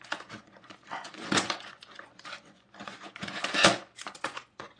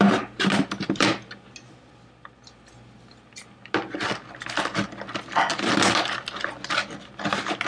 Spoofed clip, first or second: first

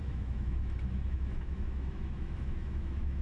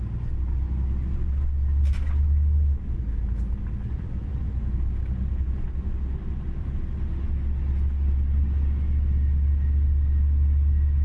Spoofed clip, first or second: first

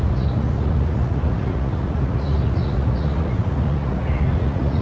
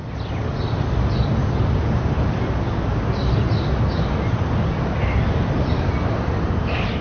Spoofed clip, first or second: first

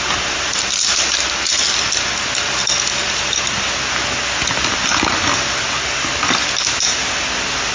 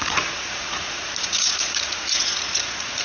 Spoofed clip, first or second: second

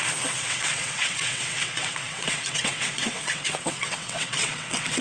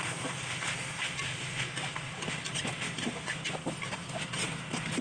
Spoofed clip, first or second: first